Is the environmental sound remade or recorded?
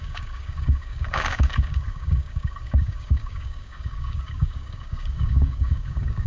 remade